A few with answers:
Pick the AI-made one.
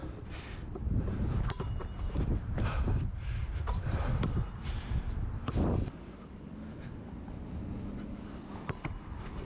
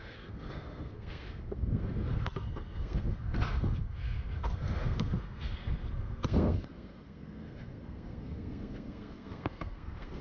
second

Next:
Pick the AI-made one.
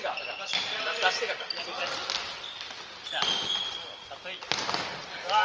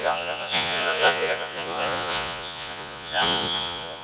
second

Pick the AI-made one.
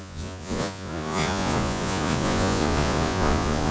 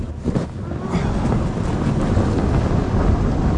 first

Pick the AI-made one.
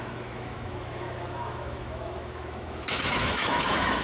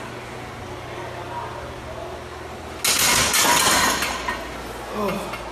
first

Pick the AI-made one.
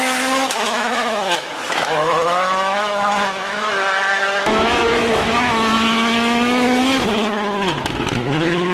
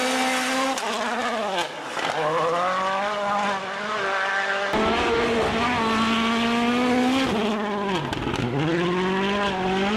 first